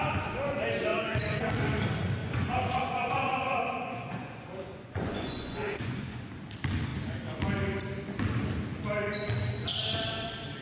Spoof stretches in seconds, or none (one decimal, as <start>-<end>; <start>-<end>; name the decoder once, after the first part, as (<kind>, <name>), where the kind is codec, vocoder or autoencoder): 0.9-1.5 (vocoder, Vocos); 2.2-6.3